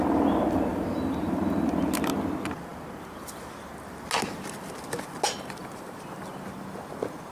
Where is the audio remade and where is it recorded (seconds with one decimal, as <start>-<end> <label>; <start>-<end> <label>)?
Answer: 0.0-0.7 recorded; 0.7-1.4 remade; 1.4-5.6 recorded; 5.6-6.3 remade; 6.3-7.3 recorded